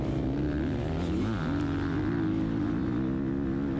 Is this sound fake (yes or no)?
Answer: no